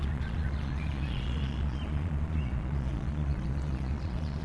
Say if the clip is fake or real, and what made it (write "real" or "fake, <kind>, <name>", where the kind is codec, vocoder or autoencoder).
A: fake, vocoder, Vocos